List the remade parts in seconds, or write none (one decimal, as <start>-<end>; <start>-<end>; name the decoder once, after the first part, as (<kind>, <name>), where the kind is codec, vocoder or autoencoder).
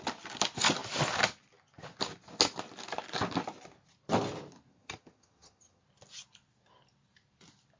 4.7-5.8 (vocoder, HiFi-GAN)